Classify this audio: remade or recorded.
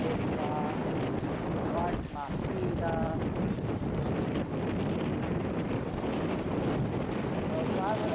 recorded